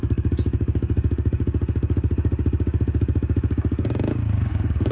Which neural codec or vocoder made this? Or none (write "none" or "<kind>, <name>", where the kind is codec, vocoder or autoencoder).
codec, DAC